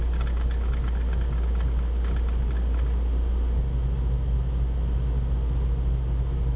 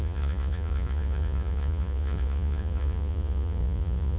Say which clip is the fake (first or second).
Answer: second